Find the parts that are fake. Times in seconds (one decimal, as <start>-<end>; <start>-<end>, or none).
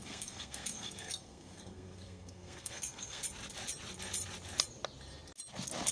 0.0-3.2